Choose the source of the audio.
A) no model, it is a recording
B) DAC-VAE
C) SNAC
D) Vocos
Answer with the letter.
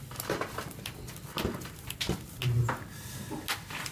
A